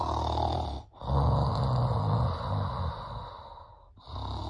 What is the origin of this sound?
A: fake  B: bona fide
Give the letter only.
B